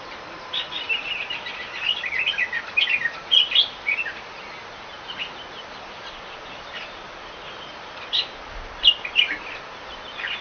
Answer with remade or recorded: recorded